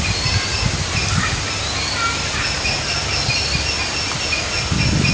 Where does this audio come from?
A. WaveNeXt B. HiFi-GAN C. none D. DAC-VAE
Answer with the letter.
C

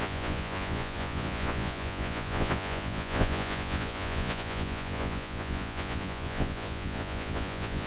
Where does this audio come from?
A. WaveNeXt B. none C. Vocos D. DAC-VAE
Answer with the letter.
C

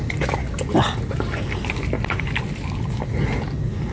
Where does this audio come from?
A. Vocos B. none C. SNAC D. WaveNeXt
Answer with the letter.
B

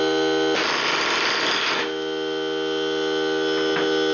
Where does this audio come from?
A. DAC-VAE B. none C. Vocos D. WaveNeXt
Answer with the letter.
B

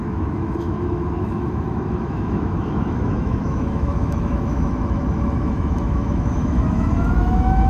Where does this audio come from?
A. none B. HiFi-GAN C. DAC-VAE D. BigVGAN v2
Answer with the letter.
C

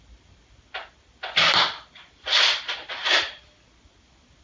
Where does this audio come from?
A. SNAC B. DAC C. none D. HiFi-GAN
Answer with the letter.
C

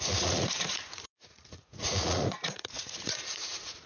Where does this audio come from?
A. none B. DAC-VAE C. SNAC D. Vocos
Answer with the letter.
D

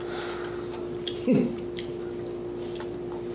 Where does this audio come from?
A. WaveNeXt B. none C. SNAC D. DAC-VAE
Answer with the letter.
B